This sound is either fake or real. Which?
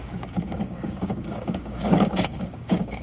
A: fake